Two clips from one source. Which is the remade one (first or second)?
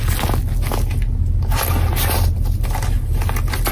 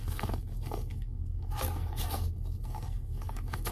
second